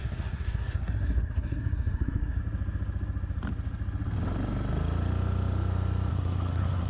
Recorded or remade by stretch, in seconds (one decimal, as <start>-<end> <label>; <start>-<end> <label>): 0.0-2.4 remade; 2.4-6.1 recorded; 6.1-6.9 remade